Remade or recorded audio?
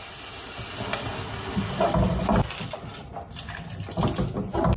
recorded